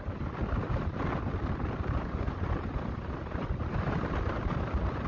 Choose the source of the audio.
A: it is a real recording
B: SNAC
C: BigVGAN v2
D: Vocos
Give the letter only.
A